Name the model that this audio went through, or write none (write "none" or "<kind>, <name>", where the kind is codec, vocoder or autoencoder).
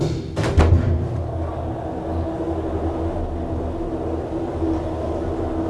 none